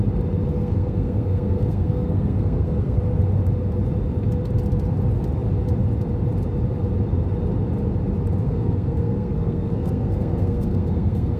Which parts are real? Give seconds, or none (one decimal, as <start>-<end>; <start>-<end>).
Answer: 0.0-0.5; 3.0-8.4